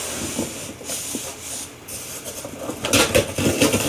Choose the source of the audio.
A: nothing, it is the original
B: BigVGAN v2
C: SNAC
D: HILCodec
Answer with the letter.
A